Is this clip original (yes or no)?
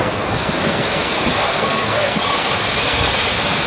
no